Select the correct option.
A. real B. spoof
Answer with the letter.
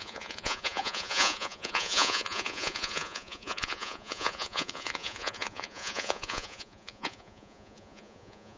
B